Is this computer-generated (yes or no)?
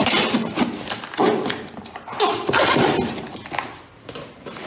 no